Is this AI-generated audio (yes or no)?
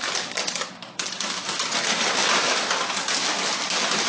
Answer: no